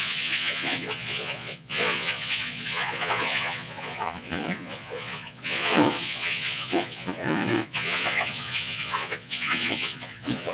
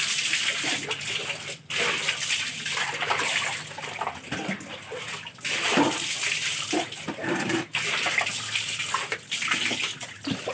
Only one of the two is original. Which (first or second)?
second